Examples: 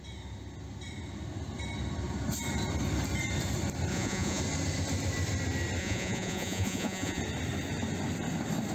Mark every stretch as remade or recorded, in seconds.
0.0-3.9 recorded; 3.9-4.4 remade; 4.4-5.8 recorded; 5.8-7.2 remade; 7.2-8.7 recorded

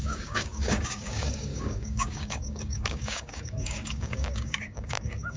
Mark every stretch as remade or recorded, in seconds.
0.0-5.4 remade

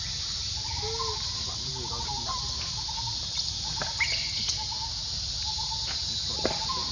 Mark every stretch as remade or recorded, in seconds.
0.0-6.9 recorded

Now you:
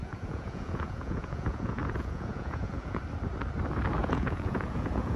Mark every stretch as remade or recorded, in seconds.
0.0-3.0 remade; 3.0-4.0 recorded; 4.0-5.2 remade

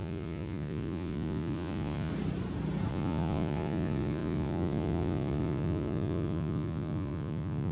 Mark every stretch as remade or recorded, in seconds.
0.0-2.1 remade; 2.1-2.9 recorded; 2.9-7.7 remade